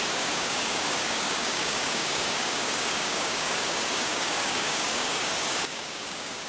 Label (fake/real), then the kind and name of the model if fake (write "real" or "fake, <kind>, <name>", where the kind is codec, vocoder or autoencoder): fake, codec, DAC